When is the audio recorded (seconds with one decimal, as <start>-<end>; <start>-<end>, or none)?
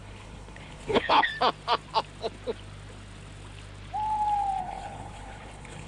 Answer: 1.3-4.6